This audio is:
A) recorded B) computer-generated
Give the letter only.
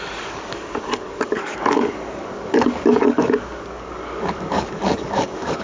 B